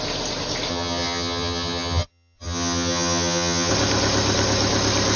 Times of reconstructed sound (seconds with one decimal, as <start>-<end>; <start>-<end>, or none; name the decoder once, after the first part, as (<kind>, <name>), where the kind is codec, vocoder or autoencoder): 0.7-3.7 (vocoder, HiFi-GAN)